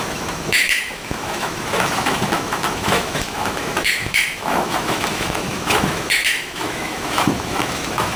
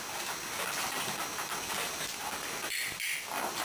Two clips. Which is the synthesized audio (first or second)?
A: first